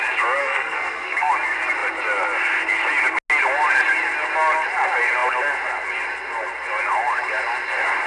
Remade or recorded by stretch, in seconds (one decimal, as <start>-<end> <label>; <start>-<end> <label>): 0.0-0.4 recorded; 0.4-1.3 remade; 1.3-8.1 recorded